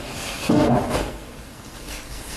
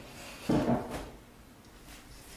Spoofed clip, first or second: first